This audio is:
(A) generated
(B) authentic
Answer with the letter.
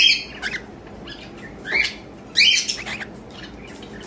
B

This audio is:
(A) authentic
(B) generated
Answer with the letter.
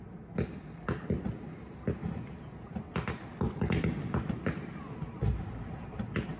A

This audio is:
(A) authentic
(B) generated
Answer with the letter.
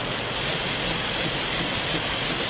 A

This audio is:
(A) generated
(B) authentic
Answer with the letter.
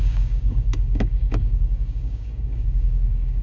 A